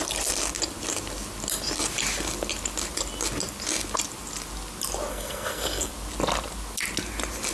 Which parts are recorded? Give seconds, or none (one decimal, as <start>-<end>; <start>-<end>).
0.0-5.1; 5.9-7.5